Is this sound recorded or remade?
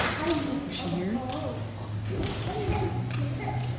recorded